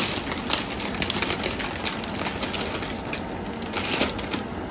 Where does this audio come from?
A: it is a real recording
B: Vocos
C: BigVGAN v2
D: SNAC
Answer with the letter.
A